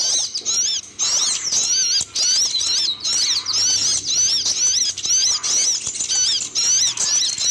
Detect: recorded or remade recorded